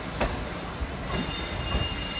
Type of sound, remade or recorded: recorded